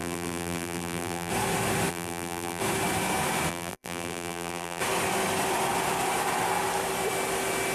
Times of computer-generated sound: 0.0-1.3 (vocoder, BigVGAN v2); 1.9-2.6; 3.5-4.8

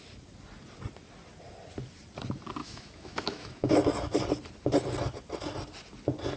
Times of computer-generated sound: 2.6-3.7 (autoencoder, DAC-VAE)

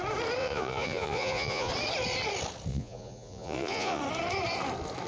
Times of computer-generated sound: 0.4-1.7 (vocoder, Vocos); 2.7-4.0